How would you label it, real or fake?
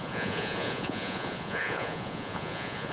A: fake